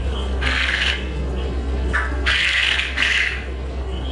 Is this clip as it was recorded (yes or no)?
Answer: no